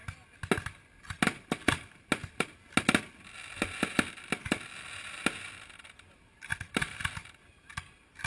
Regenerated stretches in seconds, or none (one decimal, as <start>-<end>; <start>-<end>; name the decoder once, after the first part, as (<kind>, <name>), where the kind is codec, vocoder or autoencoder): none